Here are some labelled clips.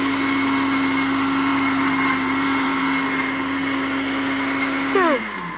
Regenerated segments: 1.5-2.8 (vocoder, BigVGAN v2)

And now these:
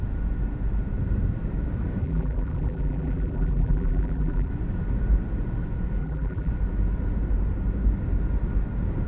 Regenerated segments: 2.0-4.5 (vocoder, BigVGAN v2); 6.0-6.5

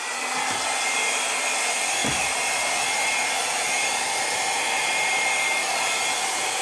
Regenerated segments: 2.0-5.9 (vocoder, BigVGAN v2)